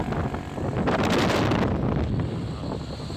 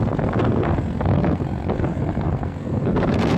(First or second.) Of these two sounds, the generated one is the second